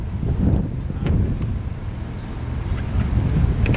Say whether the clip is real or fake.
real